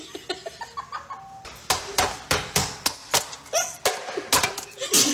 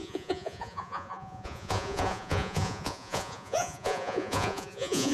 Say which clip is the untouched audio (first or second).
first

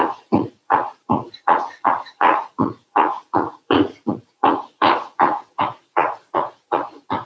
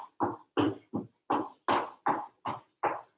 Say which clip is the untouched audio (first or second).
second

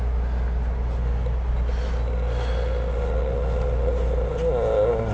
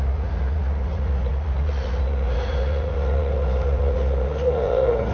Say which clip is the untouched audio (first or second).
first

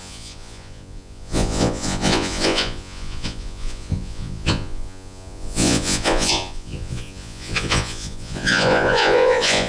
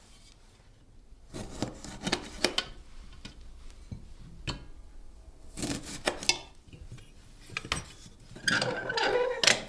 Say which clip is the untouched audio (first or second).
second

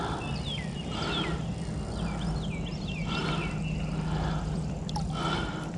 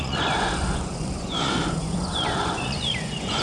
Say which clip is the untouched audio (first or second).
first